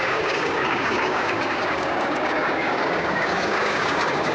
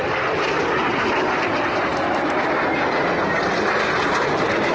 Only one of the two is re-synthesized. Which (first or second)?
first